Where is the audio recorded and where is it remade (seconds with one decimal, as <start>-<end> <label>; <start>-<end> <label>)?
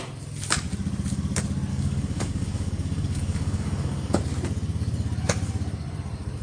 0.0-1.7 recorded; 1.7-4.2 remade; 4.2-6.4 recorded